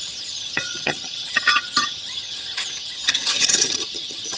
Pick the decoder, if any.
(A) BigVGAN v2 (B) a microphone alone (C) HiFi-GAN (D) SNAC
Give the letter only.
C